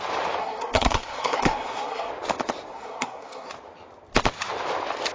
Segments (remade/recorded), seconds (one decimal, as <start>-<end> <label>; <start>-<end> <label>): 0.0-0.4 recorded; 0.4-2.1 remade; 2.1-2.7 recorded; 2.7-3.5 remade; 3.5-5.1 recorded